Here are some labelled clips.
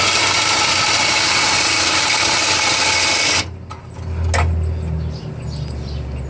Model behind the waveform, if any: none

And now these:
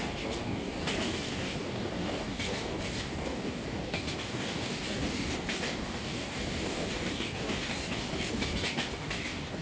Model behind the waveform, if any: codec, DAC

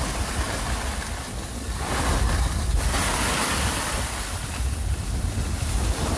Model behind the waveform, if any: none